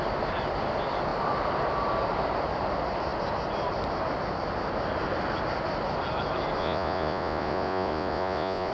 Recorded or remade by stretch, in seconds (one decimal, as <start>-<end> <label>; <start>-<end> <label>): 0.0-6.6 recorded; 6.6-8.7 remade